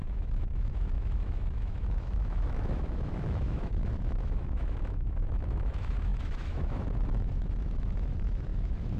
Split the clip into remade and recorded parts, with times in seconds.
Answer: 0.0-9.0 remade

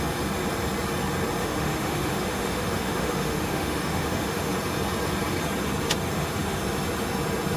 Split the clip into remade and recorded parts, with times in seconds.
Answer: 0.0-1.4 recorded; 1.4-4.5 remade; 4.5-6.1 recorded; 6.1-6.6 remade; 6.6-7.6 recorded

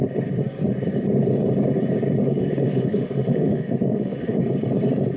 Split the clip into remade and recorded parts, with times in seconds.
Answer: 0.0-2.2 recorded; 2.2-4.4 remade; 4.4-5.2 recorded

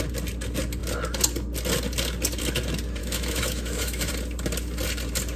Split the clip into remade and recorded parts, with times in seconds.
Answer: 0.0-3.0 recorded; 3.0-4.1 remade; 4.1-5.4 recorded

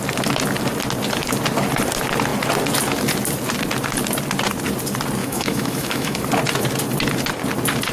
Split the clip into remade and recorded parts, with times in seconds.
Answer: 0.0-5.2 recorded; 5.2-6.2 remade; 6.2-7.9 recorded

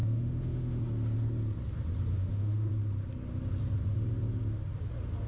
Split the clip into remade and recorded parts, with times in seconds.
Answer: 0.0-0.8 remade; 0.8-2.1 recorded; 2.1-2.7 remade; 2.7-5.3 recorded

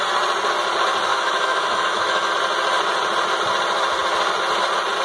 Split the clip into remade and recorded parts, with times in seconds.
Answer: 0.0-1.1 recorded; 1.1-2.3 remade; 2.3-5.0 recorded

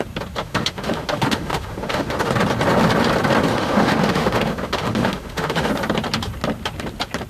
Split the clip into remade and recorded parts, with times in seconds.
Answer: 0.0-0.4 recorded; 0.4-2.3 remade; 2.3-3.5 recorded; 3.5-5.7 remade; 5.7-7.3 recorded